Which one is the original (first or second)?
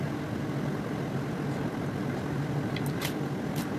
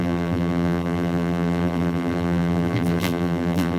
first